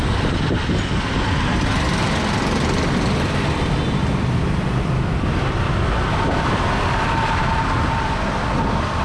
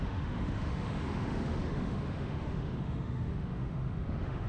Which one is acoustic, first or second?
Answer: first